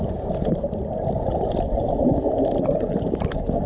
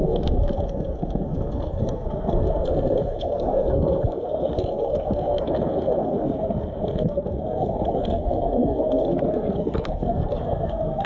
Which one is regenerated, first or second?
second